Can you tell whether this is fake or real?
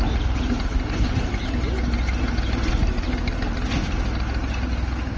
real